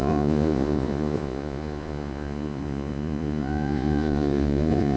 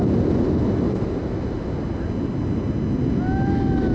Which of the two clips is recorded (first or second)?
second